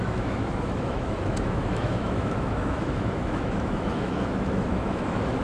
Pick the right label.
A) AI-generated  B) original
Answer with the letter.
A